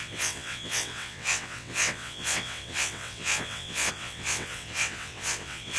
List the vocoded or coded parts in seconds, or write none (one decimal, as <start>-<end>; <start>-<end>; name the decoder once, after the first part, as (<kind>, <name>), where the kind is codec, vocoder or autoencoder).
0.0-5.8 (vocoder, WaveNeXt)